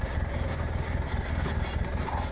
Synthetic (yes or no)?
no